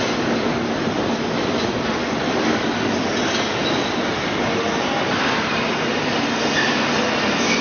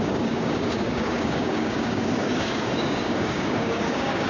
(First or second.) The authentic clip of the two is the first